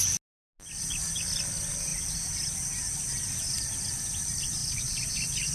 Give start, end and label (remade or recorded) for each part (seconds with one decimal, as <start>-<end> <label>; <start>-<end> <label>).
0.0-4.6 recorded; 4.6-5.1 remade; 5.1-5.5 recorded